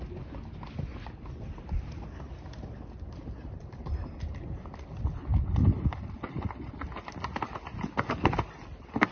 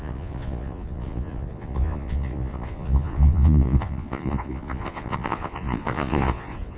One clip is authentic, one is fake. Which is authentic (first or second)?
first